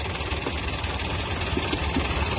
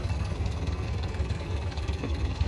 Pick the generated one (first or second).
second